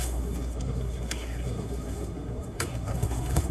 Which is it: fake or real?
fake